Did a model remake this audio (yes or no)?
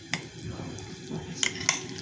no